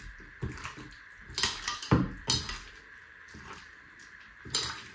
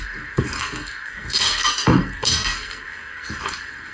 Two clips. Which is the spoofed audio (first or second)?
second